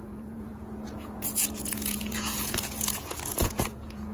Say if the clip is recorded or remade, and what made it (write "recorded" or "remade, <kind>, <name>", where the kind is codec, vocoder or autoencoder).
remade, vocoder, Vocos